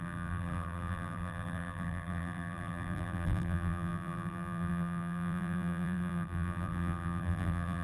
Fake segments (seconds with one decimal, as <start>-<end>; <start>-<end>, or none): 0.0-7.8